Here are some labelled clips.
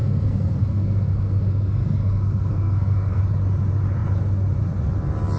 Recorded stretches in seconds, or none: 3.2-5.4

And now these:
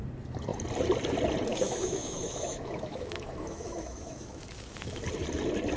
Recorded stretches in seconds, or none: 0.0-1.5; 5.0-5.8

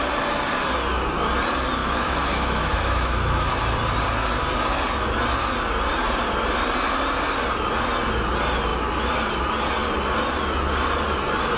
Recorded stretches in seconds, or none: 0.0-1.8; 3.6-11.6